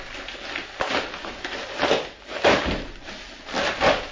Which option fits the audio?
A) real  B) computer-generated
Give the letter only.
A